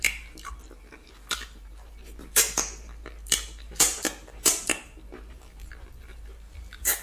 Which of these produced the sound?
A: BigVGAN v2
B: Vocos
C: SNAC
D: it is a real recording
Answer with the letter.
A